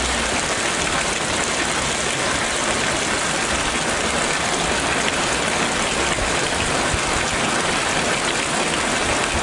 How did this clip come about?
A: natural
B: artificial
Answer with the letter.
A